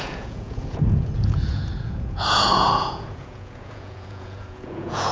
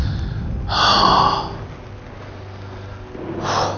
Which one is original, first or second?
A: second